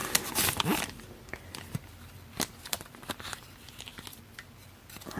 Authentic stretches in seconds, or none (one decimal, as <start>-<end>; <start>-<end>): 3.9-4.7